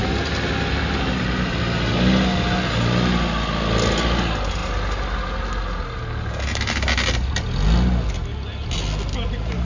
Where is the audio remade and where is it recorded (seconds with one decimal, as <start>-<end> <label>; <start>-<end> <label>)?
0.0-9.6 recorded